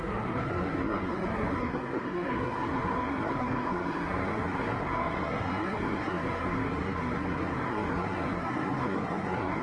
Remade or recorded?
remade